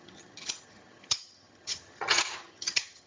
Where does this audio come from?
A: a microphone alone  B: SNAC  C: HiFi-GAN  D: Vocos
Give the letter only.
C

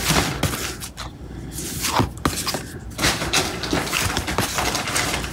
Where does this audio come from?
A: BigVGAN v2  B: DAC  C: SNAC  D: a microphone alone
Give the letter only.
D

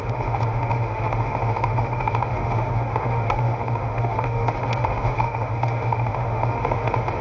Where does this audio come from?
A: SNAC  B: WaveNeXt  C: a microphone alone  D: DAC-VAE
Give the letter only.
D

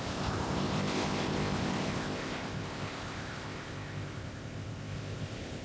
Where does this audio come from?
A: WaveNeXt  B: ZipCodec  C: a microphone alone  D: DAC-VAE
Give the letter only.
B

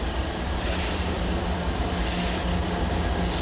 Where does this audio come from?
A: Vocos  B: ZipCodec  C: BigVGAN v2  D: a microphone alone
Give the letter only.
D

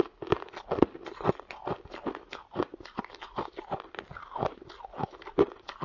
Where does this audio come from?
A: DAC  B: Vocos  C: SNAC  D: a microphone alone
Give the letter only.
D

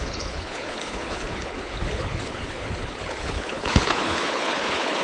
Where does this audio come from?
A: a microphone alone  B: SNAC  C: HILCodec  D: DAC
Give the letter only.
C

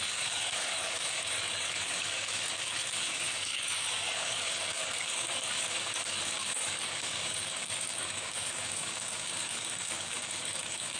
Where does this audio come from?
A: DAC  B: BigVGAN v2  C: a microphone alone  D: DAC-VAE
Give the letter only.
A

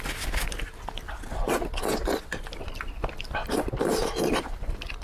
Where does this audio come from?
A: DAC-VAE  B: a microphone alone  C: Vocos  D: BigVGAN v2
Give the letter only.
B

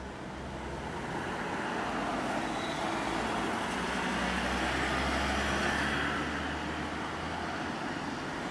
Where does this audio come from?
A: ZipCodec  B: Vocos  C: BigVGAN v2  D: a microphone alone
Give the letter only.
D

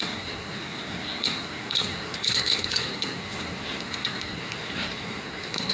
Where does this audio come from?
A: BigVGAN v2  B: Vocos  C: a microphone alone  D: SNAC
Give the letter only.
D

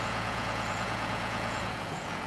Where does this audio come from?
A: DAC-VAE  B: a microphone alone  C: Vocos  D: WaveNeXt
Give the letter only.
C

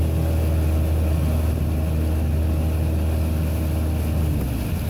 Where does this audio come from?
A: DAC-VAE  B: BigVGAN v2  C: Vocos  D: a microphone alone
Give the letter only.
D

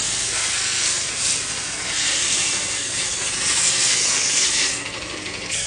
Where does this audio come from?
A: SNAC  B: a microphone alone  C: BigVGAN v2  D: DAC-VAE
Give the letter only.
A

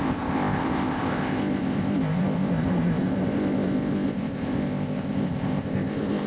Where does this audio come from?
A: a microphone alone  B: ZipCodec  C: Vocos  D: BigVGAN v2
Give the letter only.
B